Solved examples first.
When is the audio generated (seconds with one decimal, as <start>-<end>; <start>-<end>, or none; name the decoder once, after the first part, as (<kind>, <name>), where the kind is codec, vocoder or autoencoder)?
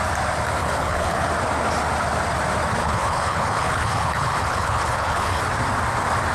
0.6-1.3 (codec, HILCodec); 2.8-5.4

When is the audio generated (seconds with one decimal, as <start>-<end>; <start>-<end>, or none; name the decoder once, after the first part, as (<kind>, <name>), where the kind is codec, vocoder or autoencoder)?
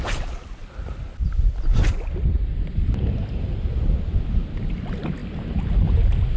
none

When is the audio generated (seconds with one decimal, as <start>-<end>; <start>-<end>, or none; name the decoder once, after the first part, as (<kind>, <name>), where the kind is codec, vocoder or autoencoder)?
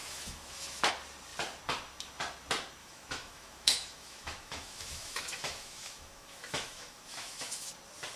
0.0-0.9 (autoencoder, DAC-VAE); 2.8-7.7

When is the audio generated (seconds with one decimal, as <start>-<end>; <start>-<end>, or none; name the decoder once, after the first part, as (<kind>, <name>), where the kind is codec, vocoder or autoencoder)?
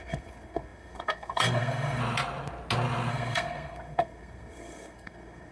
0.0-2.0 (codec, SNAC); 3.1-5.5